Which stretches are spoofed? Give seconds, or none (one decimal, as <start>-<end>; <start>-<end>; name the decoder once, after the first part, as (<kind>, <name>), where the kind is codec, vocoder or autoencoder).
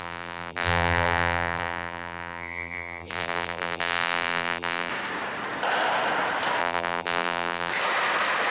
0.0-4.9 (vocoder, BigVGAN v2); 6.6-7.7